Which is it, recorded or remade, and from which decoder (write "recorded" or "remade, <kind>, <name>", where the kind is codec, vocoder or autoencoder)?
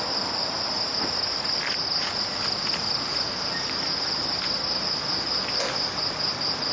recorded